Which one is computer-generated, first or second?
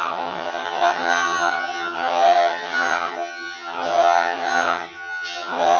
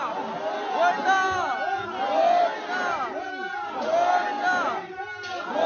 first